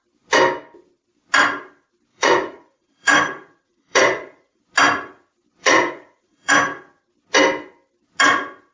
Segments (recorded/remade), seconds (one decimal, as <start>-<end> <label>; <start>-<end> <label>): 0.0-2.1 recorded; 2.1-4.6 remade; 4.6-5.6 recorded; 5.6-6.5 remade; 6.5-8.7 recorded